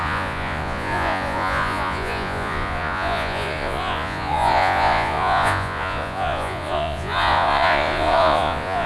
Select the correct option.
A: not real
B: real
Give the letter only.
A